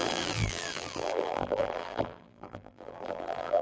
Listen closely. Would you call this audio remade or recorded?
remade